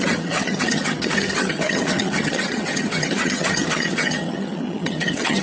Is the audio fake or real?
fake